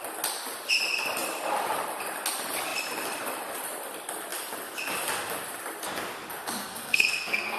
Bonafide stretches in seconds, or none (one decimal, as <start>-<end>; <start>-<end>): 0.0-6.6